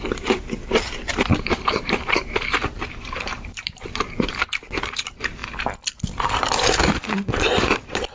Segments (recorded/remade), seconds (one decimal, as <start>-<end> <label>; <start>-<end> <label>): 0.0-5.4 remade; 5.4-5.9 recorded; 5.9-8.1 remade